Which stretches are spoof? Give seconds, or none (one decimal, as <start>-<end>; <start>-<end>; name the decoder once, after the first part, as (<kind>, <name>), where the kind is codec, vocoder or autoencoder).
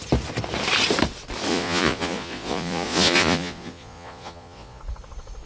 1.5-4.8 (vocoder, Vocos)